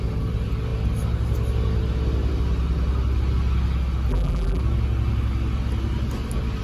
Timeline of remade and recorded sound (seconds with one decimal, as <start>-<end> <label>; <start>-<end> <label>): 0.0-4.1 recorded; 4.1-4.6 remade; 4.6-6.6 recorded

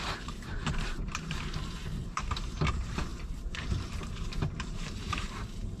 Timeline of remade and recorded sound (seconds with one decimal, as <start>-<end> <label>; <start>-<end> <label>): 0.0-5.8 remade

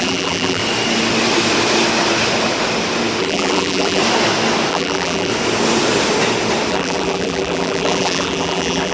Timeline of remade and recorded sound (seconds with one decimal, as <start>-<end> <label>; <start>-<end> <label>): 0.0-0.6 remade; 0.6-3.2 recorded; 3.2-4.0 remade; 4.0-4.7 recorded; 4.7-5.3 remade; 5.3-6.7 recorded; 6.7-8.9 remade

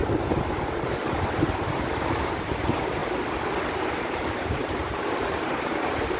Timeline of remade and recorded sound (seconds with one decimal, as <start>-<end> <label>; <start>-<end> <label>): 0.0-0.7 recorded; 0.7-3.0 remade; 3.0-4.0 recorded; 4.0-6.2 remade

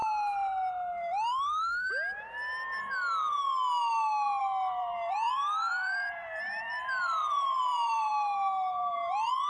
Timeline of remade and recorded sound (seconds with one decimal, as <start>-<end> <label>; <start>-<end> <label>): 0.0-4.4 recorded; 4.4-8.1 remade; 8.1-8.8 recorded; 8.8-9.5 remade